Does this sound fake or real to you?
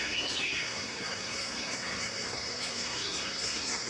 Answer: fake